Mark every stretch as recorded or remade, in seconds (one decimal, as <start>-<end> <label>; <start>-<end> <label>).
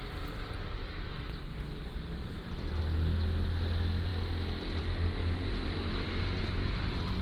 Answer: 0.0-2.2 recorded; 2.2-2.8 remade; 2.8-5.2 recorded; 5.2-7.2 remade